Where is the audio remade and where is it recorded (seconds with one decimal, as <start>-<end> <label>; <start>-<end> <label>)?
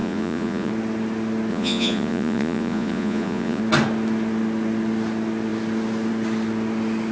0.0-0.7 remade; 0.7-1.5 recorded; 1.5-3.6 remade; 3.6-7.1 recorded